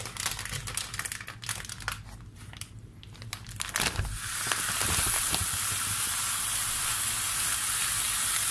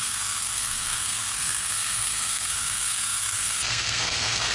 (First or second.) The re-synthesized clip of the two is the second